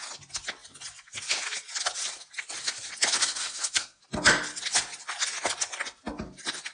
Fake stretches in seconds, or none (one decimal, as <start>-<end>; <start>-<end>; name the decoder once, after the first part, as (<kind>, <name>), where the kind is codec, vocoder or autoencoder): 3.2-4.0 (codec, SNAC)